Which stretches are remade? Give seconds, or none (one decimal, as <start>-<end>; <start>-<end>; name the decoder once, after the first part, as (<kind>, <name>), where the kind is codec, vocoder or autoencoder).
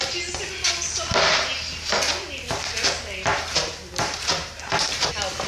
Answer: 3.3-5.1 (vocoder, BigVGAN v2)